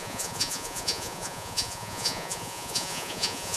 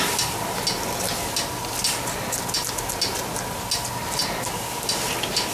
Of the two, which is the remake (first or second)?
first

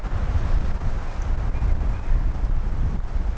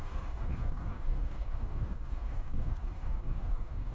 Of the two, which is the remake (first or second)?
second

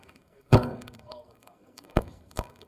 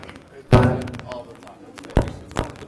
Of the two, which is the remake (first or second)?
first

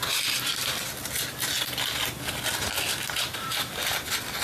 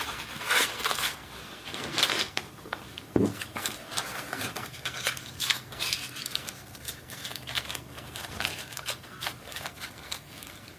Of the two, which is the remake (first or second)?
second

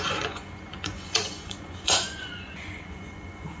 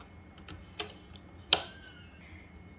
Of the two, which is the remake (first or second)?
first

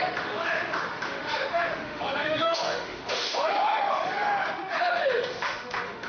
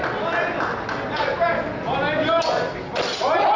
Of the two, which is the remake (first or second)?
first